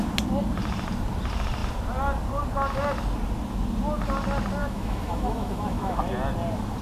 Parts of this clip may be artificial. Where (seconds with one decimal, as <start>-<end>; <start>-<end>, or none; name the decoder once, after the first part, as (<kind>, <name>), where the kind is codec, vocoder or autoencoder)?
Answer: 4.6-6.0 (autoencoder, DAC-VAE)